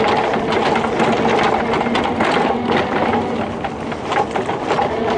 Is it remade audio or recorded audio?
recorded